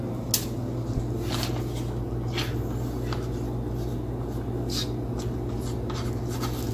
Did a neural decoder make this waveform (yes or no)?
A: no